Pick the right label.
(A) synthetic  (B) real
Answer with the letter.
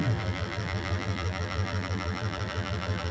A